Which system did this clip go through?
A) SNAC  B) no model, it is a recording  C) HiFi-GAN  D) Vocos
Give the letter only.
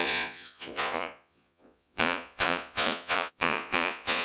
D